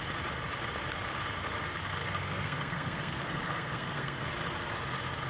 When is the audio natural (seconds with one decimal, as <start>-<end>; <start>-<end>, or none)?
0.0-1.9; 4.3-5.3